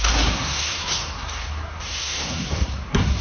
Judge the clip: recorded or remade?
remade